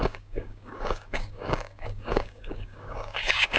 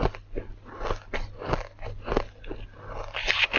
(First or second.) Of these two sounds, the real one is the second